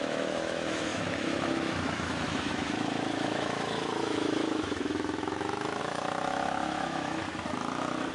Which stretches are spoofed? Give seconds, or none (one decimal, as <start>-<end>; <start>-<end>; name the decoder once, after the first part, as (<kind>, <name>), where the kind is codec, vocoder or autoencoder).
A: 0.0-7.2 (autoencoder, DAC-VAE)